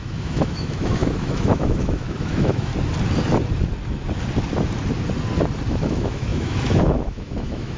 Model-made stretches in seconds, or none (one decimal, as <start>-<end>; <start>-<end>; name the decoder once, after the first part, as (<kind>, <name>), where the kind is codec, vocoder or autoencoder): 0.0-2.7 (autoencoder, DAC-VAE); 5.7-7.8